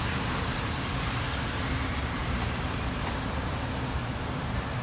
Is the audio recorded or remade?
remade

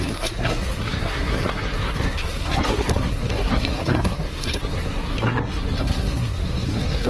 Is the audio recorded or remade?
remade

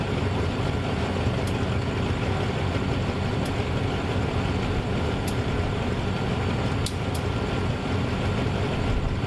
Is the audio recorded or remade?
recorded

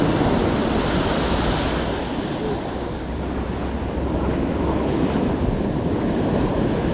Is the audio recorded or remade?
recorded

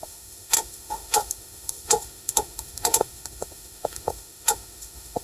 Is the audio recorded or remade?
remade